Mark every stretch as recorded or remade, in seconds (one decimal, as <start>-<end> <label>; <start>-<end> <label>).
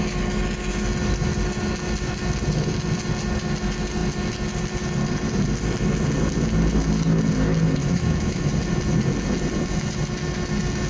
0.0-7.8 recorded; 7.8-8.5 remade; 8.5-10.9 recorded